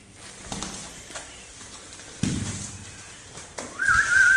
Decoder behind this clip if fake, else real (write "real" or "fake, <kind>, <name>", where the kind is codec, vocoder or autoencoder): fake, vocoder, BigVGAN v2